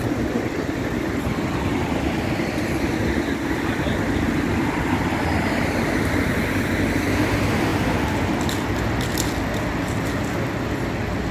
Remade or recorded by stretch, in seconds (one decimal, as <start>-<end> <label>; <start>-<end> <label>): 0.0-11.3 recorded